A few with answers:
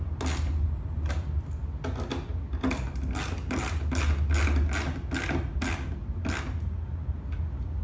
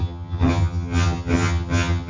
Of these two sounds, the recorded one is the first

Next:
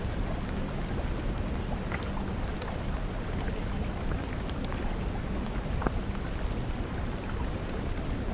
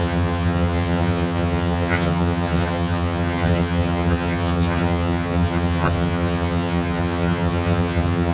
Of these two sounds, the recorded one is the first